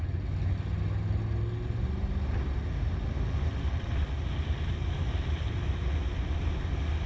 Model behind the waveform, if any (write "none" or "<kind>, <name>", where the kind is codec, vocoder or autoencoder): none